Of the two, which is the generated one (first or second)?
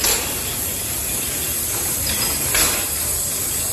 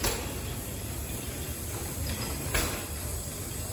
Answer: second